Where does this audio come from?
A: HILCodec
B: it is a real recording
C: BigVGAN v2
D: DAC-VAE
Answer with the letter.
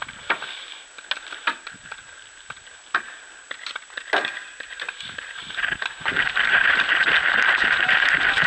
B